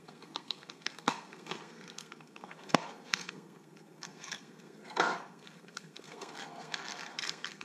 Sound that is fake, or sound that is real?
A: fake